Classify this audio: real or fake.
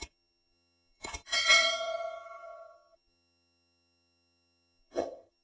fake